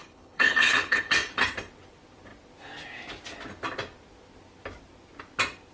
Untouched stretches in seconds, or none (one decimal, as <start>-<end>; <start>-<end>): 1.1-5.7